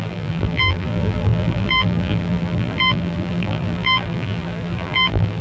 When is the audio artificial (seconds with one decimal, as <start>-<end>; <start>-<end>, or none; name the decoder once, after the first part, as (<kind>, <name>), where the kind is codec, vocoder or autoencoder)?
0.0-5.4 (vocoder, BigVGAN v2)